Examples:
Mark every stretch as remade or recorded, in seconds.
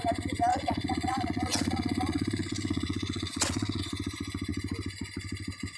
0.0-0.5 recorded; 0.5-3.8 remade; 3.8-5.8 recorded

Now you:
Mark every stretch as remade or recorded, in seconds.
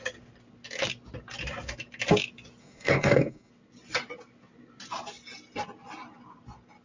0.0-2.6 recorded; 2.6-3.5 remade; 3.5-6.8 recorded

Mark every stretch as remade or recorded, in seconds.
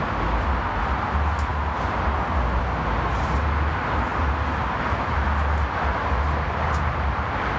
0.0-7.6 recorded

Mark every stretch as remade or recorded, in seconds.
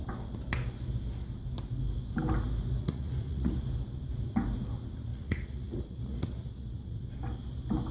0.0-2.8 recorded; 2.8-3.5 remade; 3.5-5.1 recorded; 5.1-7.0 remade; 7.0-7.9 recorded